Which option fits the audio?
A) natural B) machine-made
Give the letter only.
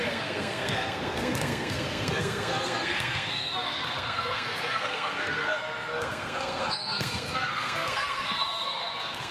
B